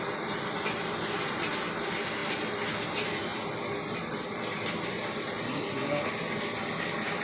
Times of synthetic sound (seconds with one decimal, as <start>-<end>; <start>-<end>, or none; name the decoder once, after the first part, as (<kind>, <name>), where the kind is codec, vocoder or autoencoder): none